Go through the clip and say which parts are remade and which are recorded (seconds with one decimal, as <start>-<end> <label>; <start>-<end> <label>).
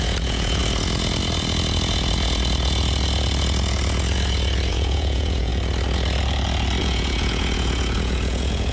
0.0-0.6 remade; 0.6-4.7 recorded; 4.7-5.5 remade; 5.5-6.8 recorded; 6.8-8.7 remade